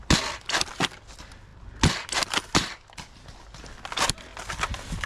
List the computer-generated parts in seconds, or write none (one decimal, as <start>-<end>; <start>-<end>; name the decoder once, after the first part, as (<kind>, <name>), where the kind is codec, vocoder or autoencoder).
none